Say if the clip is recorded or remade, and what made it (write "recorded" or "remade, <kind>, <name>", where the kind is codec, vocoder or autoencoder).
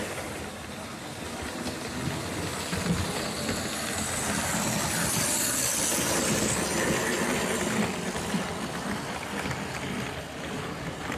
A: recorded